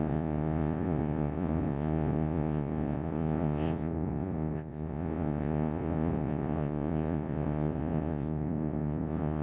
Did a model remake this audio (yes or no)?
yes